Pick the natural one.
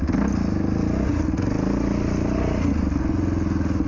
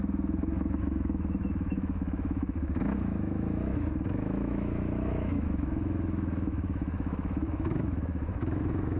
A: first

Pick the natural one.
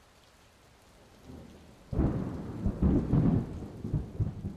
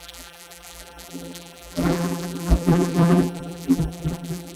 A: first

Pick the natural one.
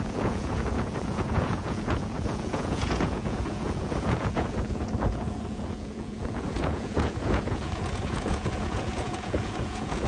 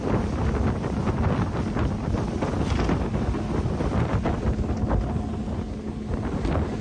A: second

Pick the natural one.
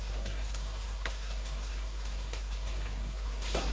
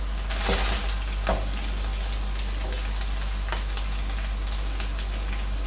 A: second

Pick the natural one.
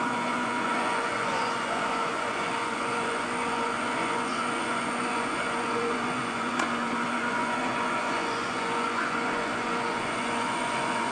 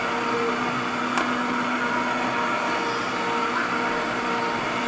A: second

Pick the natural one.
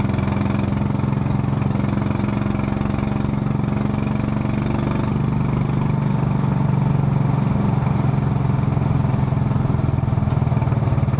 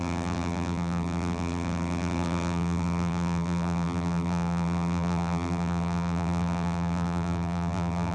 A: first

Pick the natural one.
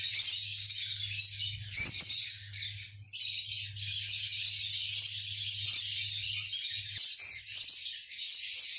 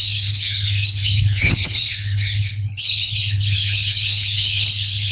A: first